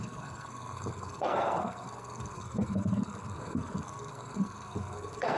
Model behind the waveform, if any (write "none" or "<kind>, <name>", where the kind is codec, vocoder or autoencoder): codec, SNAC